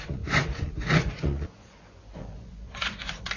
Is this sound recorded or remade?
remade